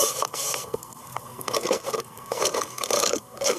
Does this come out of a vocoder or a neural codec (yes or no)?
yes